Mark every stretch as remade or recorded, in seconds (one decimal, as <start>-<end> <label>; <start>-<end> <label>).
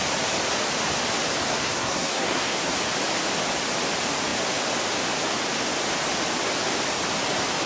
0.0-1.5 recorded; 1.5-2.6 remade; 2.6-7.7 recorded